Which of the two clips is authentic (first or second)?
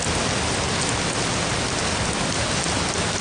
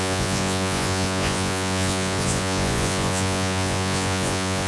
first